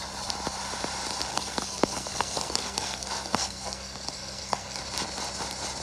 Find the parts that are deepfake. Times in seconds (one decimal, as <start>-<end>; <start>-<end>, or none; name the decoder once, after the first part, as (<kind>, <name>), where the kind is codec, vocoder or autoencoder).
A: 1.3-4.8 (codec, SNAC)